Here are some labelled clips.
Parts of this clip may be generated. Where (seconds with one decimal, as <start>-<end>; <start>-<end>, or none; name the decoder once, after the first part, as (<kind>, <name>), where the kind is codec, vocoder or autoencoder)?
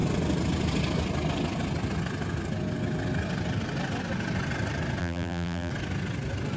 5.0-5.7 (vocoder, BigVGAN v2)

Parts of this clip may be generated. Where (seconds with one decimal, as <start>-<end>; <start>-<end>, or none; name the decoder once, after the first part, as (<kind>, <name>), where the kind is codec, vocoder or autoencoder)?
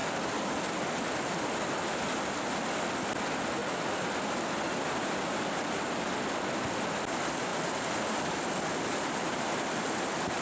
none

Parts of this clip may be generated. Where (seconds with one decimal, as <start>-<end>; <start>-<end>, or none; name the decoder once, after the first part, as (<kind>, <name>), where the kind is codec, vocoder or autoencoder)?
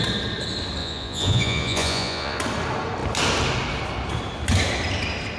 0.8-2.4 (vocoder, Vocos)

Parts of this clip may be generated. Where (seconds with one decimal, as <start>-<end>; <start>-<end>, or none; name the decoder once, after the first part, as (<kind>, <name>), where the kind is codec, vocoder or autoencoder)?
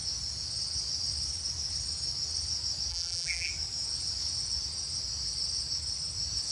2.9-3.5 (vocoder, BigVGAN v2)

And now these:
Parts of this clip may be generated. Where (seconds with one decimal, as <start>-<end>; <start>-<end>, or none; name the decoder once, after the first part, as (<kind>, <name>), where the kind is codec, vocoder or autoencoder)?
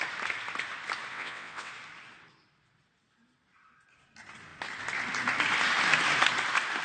1.1-1.7 (vocoder, WaveNeXt)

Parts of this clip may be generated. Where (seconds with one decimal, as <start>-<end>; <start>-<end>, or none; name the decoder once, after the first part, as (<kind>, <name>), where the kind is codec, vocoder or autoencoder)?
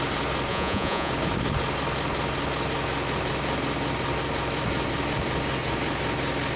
0.5-1.1 (vocoder, Vocos)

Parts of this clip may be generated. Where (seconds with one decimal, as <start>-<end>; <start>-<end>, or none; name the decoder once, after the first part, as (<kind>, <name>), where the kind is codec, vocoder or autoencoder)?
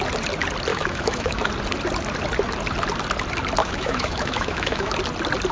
0.7-1.5 (autoencoder, DAC-VAE); 3.6-5.0